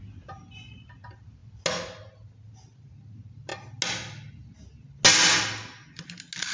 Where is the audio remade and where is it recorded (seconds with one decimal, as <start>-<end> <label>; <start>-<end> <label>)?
0.0-6.5 recorded